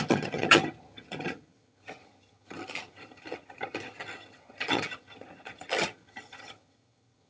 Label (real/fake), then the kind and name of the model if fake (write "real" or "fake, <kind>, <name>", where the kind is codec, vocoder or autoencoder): fake, vocoder, HiFi-GAN